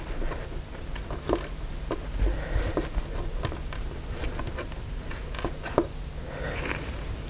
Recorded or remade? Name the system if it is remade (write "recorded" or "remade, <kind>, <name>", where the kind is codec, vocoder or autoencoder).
recorded